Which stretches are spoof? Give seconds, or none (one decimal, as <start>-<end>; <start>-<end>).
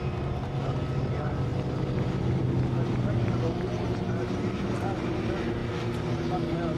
none